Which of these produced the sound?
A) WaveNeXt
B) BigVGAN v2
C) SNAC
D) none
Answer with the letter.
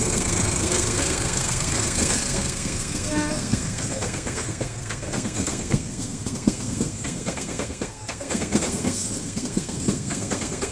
C